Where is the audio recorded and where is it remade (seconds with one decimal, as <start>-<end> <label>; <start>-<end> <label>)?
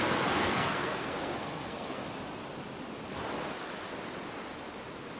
0.0-2.0 remade; 2.0-5.2 recorded